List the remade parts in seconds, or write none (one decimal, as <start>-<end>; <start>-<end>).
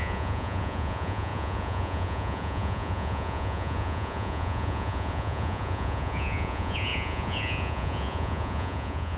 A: 0.0-9.2